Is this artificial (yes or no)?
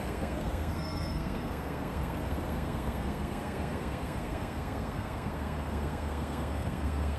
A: yes